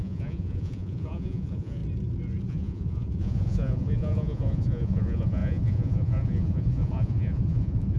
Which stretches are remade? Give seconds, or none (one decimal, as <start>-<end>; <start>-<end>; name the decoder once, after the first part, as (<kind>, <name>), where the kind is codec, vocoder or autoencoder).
0.0-1.8 (vocoder, Vocos); 2.5-8.0